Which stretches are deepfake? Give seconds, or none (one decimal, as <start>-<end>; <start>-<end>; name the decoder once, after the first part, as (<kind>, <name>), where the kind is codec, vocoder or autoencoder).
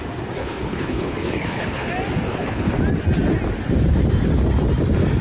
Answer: 0.4-1.9 (codec, HILCodec); 2.3-2.8